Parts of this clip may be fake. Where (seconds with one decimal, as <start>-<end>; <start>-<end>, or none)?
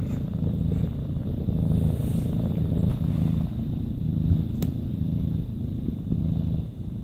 none